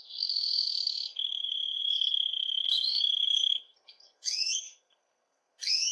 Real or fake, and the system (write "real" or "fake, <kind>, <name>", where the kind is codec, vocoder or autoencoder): fake, codec, SNAC